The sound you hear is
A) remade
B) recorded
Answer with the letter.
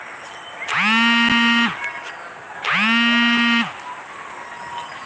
B